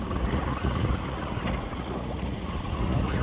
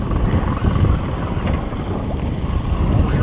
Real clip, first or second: second